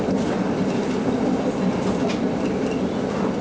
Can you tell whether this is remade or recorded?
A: recorded